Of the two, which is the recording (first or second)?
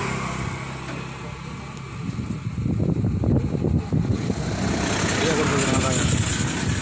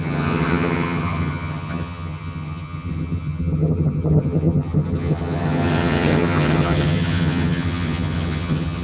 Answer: first